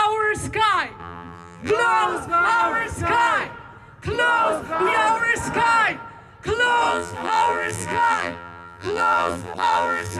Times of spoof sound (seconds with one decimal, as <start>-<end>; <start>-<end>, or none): 1.0-1.7; 6.9-10.2

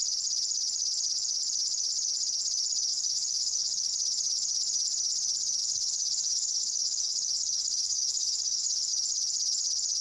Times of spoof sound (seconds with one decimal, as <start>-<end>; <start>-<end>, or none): 2.9-3.9; 5.6-8.9

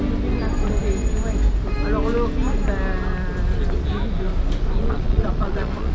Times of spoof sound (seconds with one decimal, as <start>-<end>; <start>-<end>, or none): 4.8-5.9

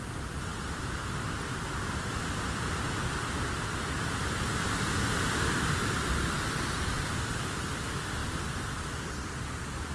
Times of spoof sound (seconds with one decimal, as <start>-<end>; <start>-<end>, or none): none

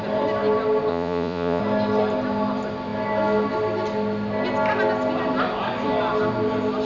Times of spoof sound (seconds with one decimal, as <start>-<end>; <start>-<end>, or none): 0.9-1.6

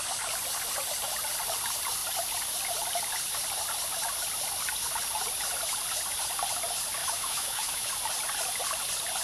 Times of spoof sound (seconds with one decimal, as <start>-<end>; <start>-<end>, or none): 7.0-7.9